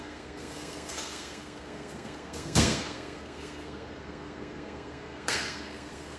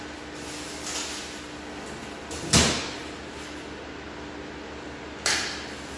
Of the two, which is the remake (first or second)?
first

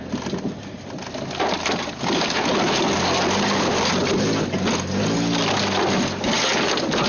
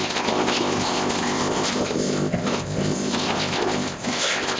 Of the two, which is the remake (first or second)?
second